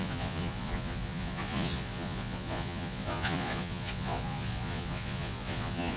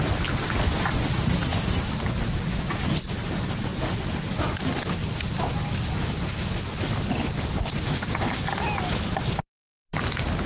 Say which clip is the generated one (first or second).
first